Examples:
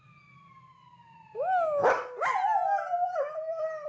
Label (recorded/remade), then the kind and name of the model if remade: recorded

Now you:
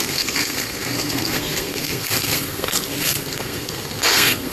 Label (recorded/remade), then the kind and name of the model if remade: remade, codec, SNAC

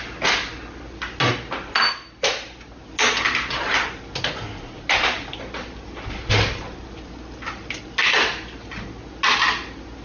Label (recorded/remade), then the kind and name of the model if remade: recorded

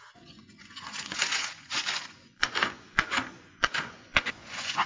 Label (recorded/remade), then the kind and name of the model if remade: remade, vocoder, Vocos